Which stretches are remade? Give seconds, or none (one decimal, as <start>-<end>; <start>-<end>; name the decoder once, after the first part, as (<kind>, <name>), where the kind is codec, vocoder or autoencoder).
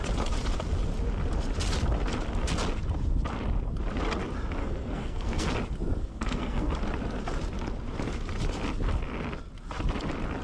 4.6-5.5 (codec, SNAC); 6.0-6.7